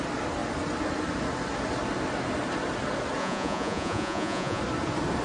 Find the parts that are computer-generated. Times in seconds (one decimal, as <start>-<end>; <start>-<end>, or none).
3.2-4.6